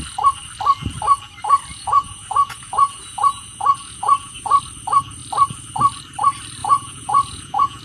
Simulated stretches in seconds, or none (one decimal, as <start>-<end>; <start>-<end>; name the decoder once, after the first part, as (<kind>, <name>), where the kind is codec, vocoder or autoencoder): 1.7-4.6 (vocoder, Vocos); 6.6-7.8